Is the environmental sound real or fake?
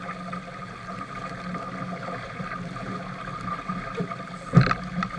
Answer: real